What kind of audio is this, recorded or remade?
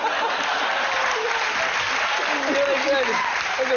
recorded